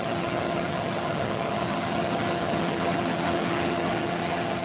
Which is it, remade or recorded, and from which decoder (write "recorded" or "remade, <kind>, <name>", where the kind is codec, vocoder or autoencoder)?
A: remade, vocoder, HiFi-GAN